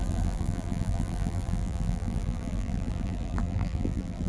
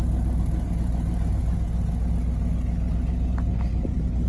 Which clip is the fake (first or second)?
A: first